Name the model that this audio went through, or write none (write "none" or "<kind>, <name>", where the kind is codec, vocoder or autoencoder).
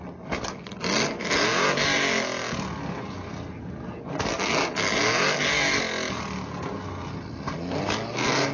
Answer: none